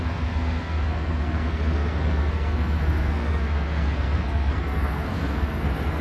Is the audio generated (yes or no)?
yes